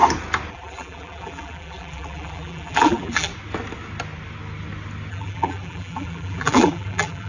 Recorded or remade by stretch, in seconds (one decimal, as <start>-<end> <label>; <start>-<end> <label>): 0.0-0.5 recorded; 0.5-3.3 remade; 3.3-5.1 recorded; 5.1-7.3 remade